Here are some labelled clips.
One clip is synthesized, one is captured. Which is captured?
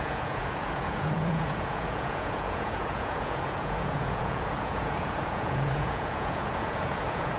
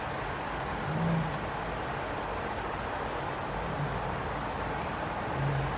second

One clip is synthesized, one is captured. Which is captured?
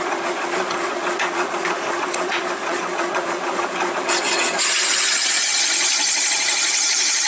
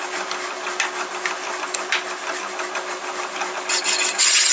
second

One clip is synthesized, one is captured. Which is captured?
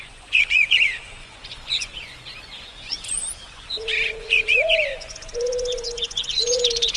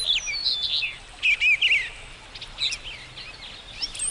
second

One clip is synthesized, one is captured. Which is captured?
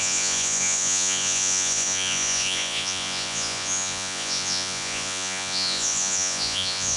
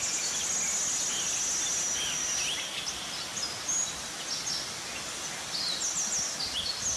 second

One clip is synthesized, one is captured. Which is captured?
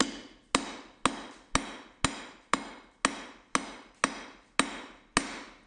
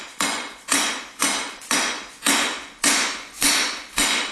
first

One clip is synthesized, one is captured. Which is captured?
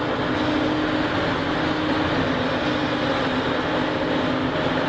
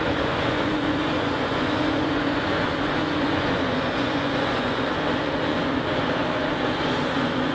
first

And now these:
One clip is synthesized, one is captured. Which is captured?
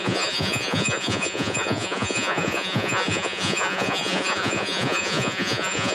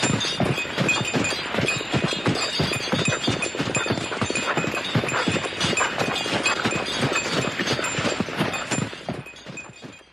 second